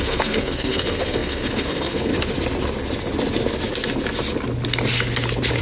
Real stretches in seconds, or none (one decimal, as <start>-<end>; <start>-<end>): 2.1-5.6